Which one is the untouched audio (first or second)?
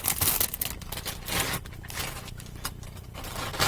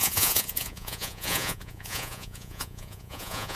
first